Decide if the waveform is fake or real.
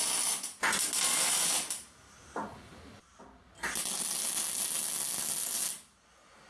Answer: real